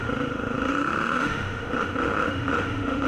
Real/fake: fake